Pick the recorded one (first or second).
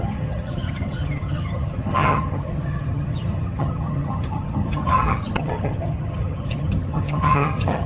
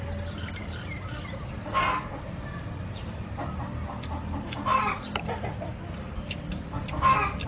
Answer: second